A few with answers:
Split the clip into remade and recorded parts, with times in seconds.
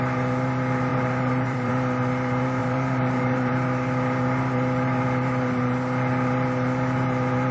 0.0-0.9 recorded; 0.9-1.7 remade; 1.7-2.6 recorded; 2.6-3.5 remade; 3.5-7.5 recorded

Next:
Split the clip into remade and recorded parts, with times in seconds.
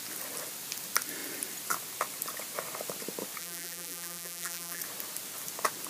0.0-3.4 recorded; 3.4-4.8 remade; 4.8-5.9 recorded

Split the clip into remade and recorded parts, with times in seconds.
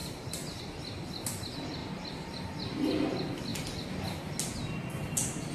0.0-0.6 remade; 0.6-1.8 recorded; 1.8-2.4 remade; 2.4-5.5 recorded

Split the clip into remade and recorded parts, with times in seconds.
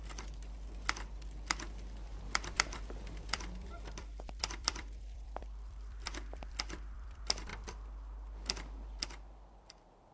0.0-10.1 remade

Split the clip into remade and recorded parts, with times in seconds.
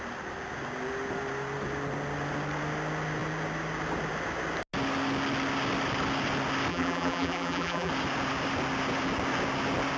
0.0-6.7 recorded; 6.7-7.9 remade; 7.9-10.0 recorded